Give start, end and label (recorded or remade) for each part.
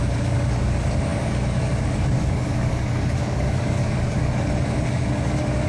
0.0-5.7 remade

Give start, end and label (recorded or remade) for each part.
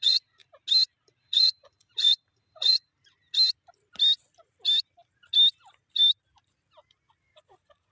0.0-0.4 remade; 0.4-1.2 recorded; 1.2-2.9 remade; 2.9-7.2 recorded; 7.2-7.9 remade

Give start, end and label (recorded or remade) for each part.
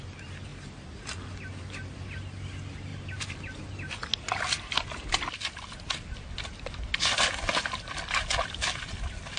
0.0-9.4 recorded